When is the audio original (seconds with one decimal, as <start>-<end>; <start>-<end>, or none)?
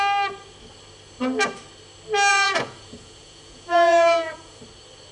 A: 0.0-2.3; 4.6-5.1